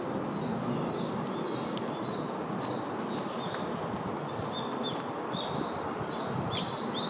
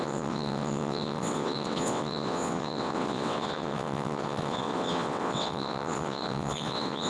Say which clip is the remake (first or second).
second